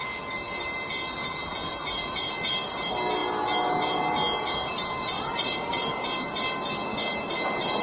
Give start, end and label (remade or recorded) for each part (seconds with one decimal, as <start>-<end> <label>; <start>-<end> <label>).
0.0-7.8 recorded